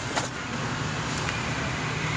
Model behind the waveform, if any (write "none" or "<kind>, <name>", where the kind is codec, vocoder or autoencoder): none